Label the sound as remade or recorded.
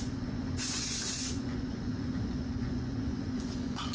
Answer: remade